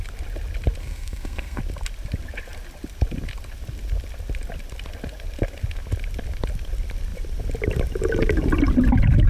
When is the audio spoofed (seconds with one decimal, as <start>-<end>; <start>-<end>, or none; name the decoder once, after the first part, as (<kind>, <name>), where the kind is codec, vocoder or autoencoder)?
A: 0.8-1.6 (codec, SNAC)